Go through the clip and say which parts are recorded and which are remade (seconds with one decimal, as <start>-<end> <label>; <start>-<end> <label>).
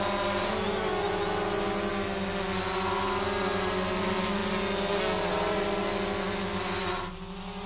0.0-7.7 recorded